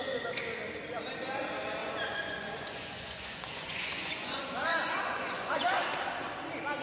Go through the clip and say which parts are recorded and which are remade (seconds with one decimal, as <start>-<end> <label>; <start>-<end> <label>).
0.0-1.8 recorded; 1.8-5.9 remade; 5.9-6.8 recorded